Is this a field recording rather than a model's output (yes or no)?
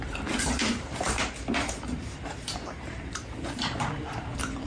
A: no